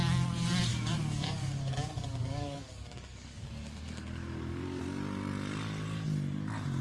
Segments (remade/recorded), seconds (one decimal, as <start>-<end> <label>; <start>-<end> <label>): 0.0-0.7 recorded; 0.7-4.8 remade; 4.8-6.8 recorded